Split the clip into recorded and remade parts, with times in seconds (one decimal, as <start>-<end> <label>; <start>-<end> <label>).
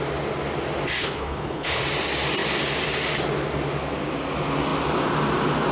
0.0-1.0 recorded; 1.0-1.8 remade; 1.8-5.7 recorded